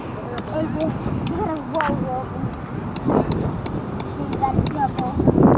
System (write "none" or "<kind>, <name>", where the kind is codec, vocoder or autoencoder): none